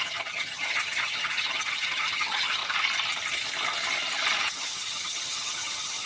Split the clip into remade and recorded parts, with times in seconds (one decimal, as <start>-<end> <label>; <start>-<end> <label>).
0.0-2.6 remade; 2.6-4.4 recorded; 4.4-6.1 remade